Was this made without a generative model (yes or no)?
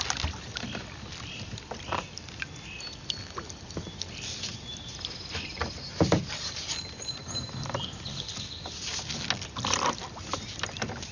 yes